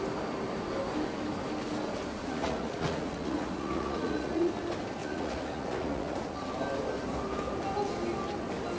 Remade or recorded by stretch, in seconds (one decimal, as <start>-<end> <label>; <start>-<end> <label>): 0.0-2.1 recorded; 2.1-4.5 remade; 4.5-5.0 recorded; 5.0-6.5 remade; 6.5-8.8 recorded